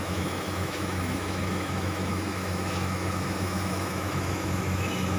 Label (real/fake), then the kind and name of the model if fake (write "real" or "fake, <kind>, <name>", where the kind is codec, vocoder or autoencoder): fake, autoencoder, DAC-VAE